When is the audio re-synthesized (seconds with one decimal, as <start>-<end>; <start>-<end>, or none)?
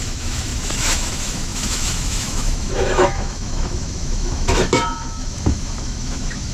0.0-6.5